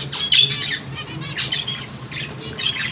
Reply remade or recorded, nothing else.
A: recorded